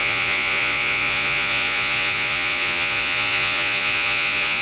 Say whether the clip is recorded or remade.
remade